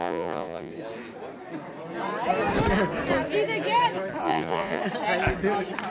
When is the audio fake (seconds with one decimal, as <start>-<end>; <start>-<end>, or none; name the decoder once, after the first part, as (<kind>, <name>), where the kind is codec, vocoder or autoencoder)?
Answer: 0.0-0.7 (vocoder, Vocos); 4.2-4.8